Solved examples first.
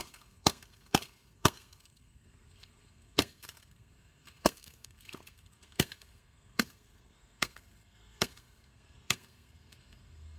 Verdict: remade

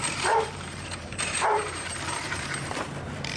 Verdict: remade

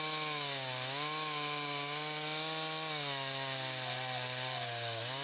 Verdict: recorded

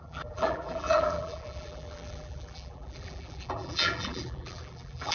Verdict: remade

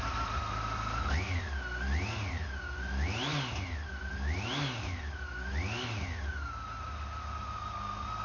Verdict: recorded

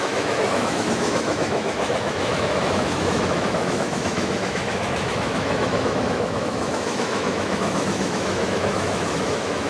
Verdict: remade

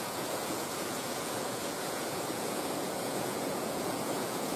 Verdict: remade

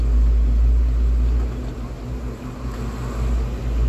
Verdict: recorded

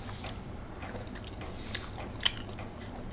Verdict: recorded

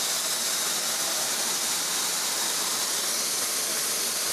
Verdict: recorded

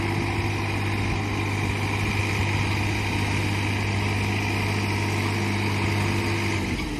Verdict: recorded